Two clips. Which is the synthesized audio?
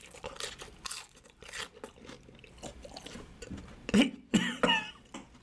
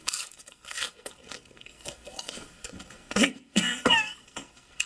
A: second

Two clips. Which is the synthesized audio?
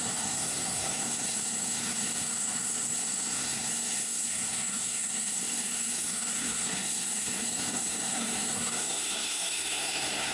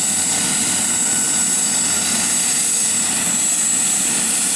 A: first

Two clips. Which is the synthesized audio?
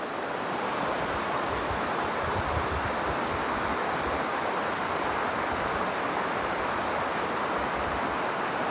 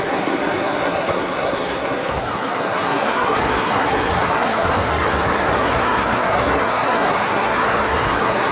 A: second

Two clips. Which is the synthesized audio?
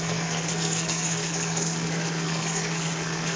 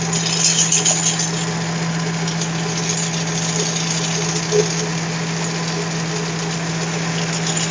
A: first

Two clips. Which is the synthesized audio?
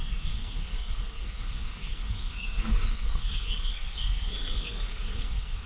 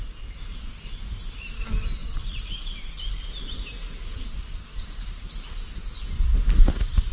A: first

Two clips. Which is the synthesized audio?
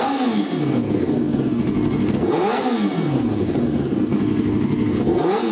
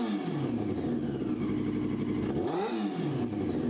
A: first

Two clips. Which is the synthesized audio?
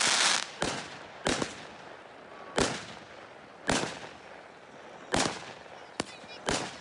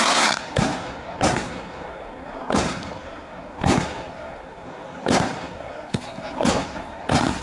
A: second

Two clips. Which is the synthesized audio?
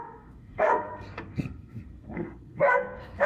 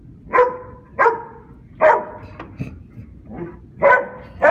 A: first